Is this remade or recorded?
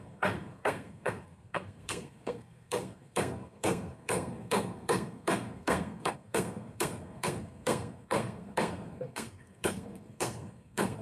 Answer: remade